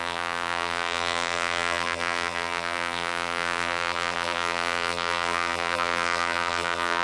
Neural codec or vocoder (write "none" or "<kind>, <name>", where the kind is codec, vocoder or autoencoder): vocoder, BigVGAN v2